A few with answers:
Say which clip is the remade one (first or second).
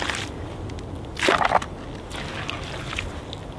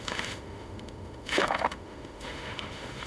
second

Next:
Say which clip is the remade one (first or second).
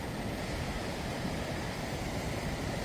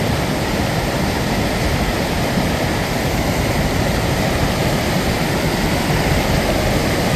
first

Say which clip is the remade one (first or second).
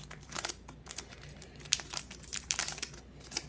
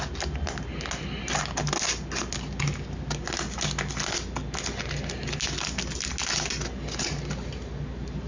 first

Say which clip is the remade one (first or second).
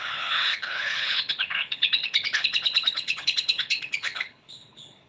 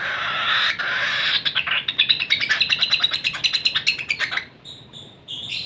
first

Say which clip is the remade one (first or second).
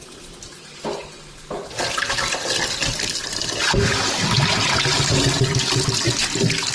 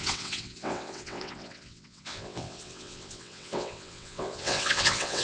second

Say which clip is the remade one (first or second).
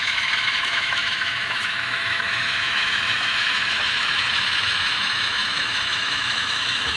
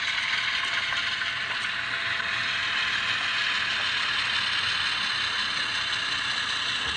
first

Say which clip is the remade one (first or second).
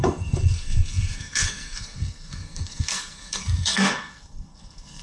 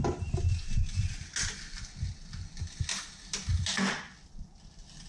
first